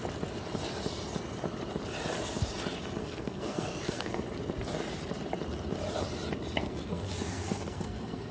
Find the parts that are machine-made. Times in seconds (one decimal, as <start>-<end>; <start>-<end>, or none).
3.0-4.2; 6.6-8.3